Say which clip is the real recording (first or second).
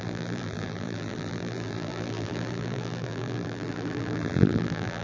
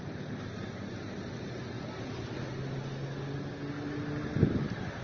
second